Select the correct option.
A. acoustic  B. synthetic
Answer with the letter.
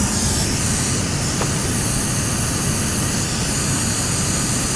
A